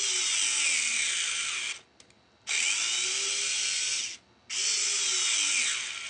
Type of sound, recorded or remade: recorded